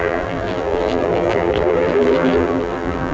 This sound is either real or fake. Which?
fake